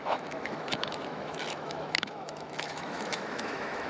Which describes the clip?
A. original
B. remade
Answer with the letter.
B